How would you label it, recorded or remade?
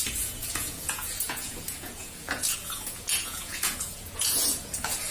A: remade